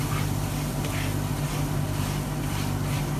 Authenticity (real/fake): real